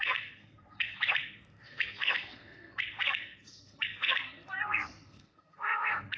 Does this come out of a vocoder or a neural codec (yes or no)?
yes